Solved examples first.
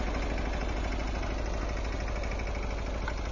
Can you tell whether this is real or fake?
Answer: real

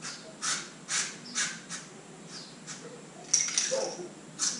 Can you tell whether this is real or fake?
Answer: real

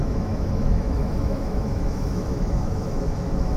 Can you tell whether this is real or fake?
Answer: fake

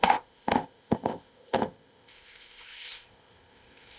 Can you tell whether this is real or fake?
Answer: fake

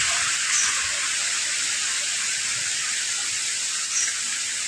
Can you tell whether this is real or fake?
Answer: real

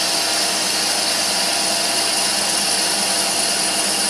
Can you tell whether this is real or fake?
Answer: real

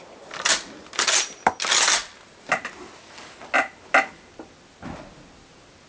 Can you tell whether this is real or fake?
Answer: real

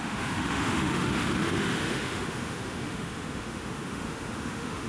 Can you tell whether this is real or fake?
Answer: fake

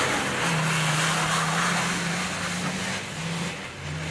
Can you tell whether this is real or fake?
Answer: real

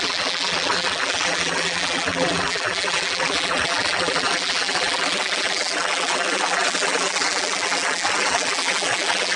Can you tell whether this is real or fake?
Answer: fake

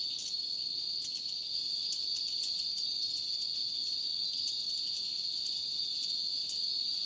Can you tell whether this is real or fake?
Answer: real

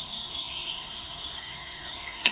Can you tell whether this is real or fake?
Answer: fake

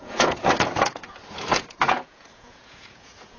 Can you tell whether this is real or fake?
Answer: fake